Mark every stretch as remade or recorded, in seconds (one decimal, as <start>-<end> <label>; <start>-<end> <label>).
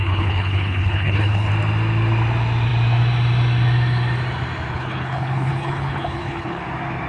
0.0-1.5 remade; 1.5-4.7 recorded; 4.7-6.6 remade; 6.6-7.1 recorded